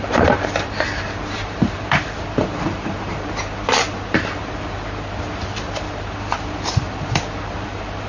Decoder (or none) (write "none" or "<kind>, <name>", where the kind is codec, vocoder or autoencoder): vocoder, BigVGAN v2